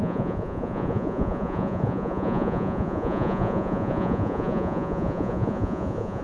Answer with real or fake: fake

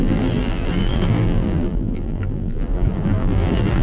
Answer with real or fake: fake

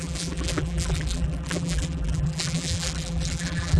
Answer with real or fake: fake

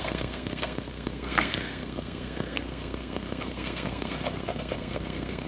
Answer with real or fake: fake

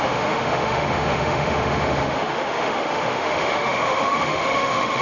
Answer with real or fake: fake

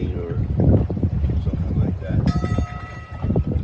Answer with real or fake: fake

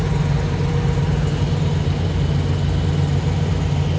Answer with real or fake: real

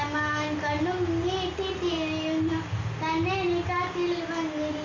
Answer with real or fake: real